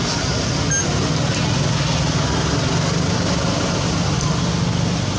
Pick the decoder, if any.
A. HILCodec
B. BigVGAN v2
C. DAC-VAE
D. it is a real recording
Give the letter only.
D